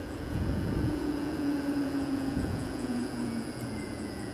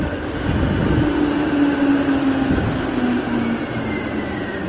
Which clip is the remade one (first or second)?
first